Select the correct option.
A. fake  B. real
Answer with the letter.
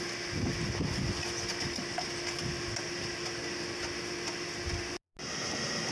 B